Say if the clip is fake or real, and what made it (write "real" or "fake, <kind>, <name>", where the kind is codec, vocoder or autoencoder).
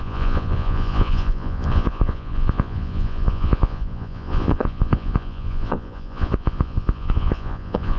fake, vocoder, Vocos